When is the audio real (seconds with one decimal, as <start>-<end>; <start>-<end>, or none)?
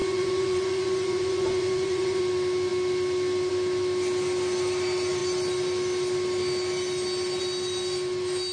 2.2-8.5